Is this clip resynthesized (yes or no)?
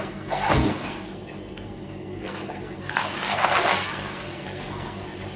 yes